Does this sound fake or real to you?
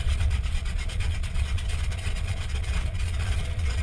fake